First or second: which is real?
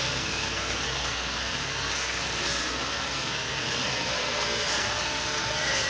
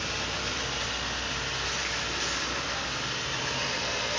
second